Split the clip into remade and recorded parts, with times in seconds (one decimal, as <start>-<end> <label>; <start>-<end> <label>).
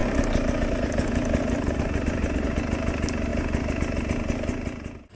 0.0-5.1 recorded